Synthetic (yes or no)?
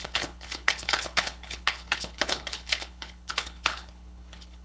yes